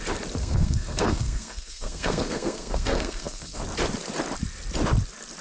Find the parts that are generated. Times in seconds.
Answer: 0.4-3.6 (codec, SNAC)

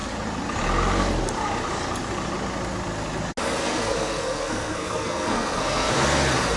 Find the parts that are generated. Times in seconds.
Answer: 3.6-5.9 (codec, SNAC)

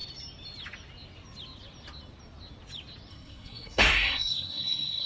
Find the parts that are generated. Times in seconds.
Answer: 3.1-5.1 (codec, SNAC)